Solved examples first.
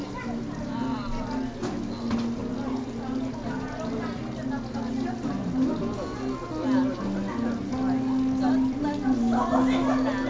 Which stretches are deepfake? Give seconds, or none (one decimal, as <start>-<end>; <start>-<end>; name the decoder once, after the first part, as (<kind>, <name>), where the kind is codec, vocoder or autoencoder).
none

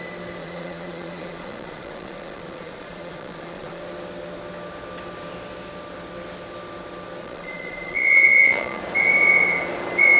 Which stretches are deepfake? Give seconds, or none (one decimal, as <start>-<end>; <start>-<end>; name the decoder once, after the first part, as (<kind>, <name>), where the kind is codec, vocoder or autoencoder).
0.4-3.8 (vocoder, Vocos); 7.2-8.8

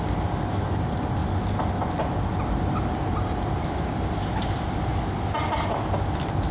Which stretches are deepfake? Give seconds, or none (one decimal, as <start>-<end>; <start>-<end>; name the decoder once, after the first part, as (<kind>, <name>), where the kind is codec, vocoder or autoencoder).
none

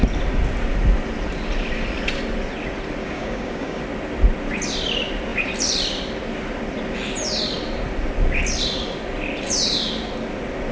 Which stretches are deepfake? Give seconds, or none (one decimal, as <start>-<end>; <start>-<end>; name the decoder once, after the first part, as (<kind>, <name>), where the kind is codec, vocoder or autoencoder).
3.0-3.8 (codec, DAC)